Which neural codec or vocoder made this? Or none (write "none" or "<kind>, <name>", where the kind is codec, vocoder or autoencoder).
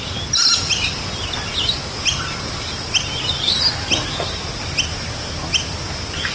none